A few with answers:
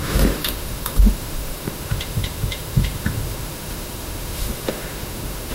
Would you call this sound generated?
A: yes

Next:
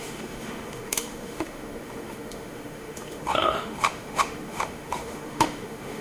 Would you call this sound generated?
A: yes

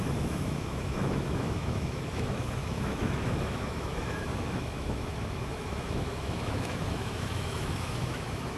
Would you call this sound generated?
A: yes